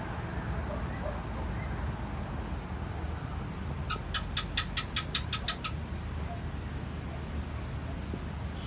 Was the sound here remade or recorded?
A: recorded